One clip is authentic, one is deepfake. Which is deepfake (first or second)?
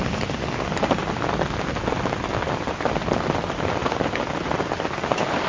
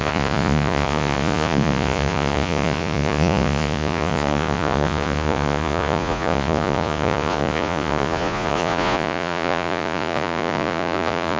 second